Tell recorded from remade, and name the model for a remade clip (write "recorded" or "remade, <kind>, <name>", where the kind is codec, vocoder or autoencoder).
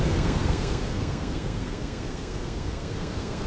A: remade, codec, SNAC